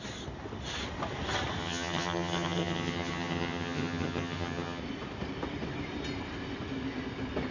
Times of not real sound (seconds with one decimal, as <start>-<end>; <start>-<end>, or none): 1.6-4.8